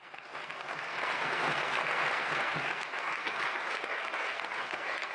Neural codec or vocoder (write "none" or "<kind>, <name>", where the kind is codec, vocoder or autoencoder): codec, SNAC